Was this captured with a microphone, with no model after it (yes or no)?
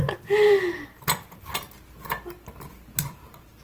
yes